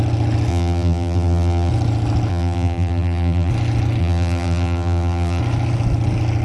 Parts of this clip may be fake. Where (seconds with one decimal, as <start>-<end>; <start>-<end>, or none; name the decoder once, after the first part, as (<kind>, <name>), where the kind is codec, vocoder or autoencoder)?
0.5-1.7 (vocoder, BigVGAN v2); 2.3-3.5; 4.0-5.4